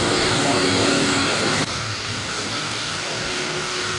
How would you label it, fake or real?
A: fake